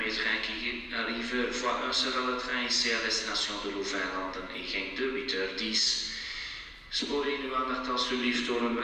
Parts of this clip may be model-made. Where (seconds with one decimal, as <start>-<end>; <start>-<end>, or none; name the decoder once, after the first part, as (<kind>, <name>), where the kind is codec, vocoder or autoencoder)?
none